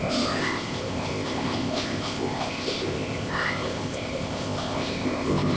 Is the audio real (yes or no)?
no